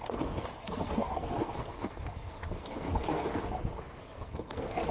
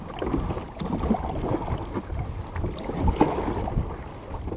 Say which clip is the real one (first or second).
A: second